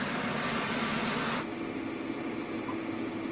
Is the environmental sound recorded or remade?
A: recorded